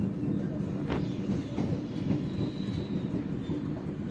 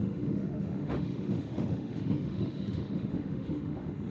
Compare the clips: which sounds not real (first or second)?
second